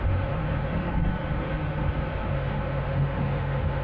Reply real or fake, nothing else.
fake